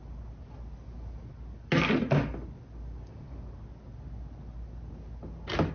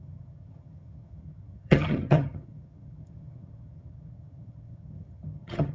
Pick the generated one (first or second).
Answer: second